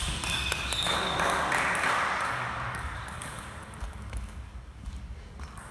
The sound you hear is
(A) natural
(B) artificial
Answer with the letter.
B